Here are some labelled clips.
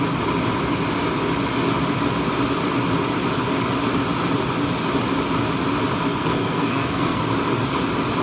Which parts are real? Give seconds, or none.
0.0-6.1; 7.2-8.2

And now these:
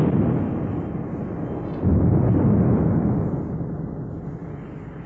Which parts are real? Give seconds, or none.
0.0-5.1